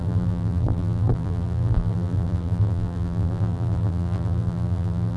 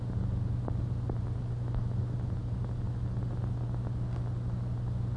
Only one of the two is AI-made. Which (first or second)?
first